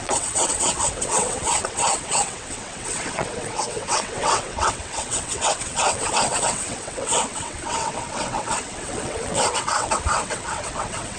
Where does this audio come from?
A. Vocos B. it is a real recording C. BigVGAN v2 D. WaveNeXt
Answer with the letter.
D